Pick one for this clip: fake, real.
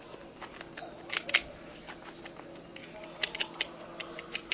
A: real